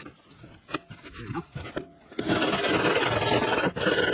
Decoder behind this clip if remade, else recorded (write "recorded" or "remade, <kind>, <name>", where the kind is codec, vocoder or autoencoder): recorded